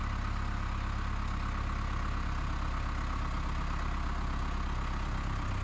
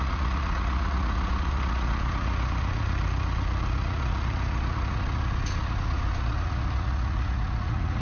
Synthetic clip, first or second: second